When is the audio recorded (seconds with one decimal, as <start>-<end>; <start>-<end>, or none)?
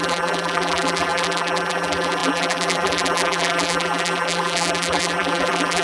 none